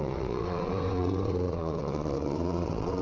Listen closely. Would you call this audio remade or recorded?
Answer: remade